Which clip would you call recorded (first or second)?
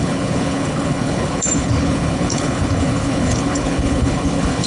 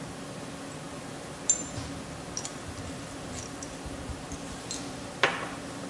second